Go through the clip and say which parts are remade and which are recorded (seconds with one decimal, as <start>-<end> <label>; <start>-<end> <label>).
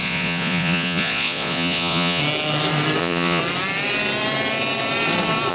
0.0-2.2 remade; 2.2-3.0 recorded; 3.0-3.4 remade; 3.4-5.5 recorded